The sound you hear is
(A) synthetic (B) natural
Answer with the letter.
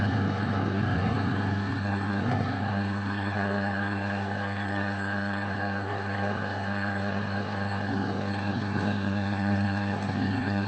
A